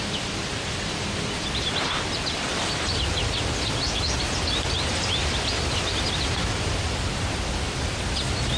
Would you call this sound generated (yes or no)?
no